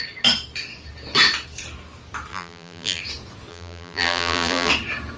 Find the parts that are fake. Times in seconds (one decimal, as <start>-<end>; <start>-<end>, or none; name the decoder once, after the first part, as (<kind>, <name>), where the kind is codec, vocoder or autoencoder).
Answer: 2.3-3.0 (vocoder, BigVGAN v2); 3.5-4.7